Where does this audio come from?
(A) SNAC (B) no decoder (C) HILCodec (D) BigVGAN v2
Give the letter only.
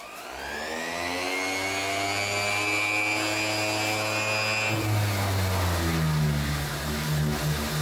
B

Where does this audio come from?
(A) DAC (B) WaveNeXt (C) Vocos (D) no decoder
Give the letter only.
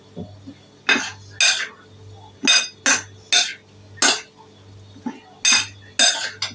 D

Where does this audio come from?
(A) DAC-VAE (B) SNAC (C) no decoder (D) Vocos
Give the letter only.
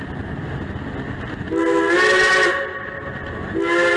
C